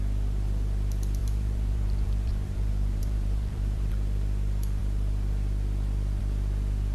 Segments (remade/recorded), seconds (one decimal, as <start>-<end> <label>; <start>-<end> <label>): 0.0-1.2 recorded; 1.2-3.9 remade; 3.9-6.9 recorded